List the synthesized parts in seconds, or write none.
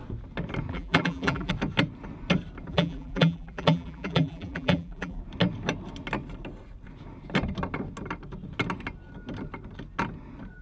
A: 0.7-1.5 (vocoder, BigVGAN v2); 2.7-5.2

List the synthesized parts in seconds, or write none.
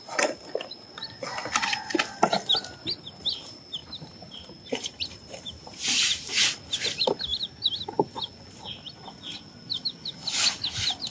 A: 3.8-6.3 (vocoder, BigVGAN v2)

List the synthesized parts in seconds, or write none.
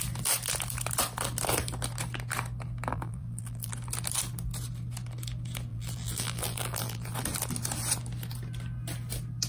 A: 2.9-3.7 (vocoder, BigVGAN v2); 5.7-7.1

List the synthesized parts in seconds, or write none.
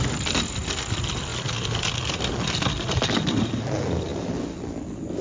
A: 1.3-3.4 (vocoder, BigVGAN v2)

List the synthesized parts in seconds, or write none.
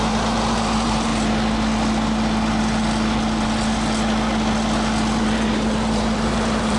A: 0.0-1.1 (vocoder, BigVGAN v2); 5.2-6.8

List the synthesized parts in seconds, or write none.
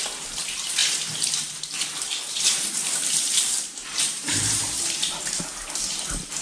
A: 3.8-5.5 (vocoder, BigVGAN v2)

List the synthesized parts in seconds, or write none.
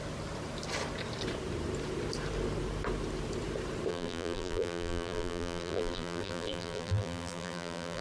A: 3.9-8.0 (vocoder, BigVGAN v2)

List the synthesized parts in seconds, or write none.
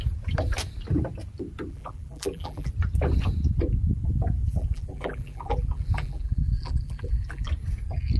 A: 1.7-2.7 (vocoder, BigVGAN v2); 4.4-7.5